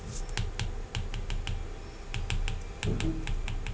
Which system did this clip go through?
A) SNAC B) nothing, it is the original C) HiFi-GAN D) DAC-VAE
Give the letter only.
B